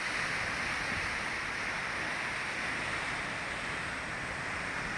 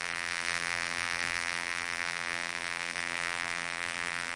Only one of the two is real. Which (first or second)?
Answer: first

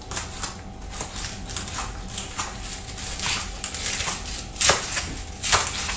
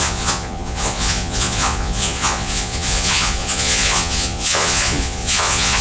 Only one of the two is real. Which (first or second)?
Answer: first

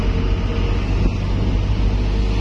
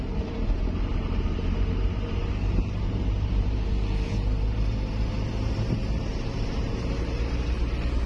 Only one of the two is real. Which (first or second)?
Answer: first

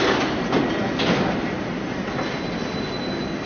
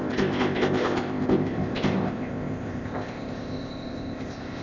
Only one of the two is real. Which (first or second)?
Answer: first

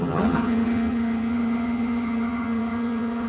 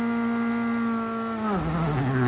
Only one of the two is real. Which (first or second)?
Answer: second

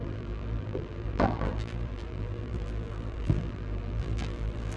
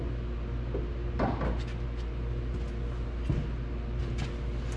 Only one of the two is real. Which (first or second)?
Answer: second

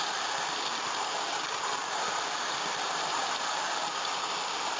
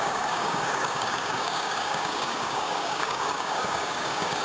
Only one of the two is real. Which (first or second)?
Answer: first